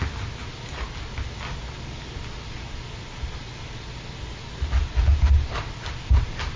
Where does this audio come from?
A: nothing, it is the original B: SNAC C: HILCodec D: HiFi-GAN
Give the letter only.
A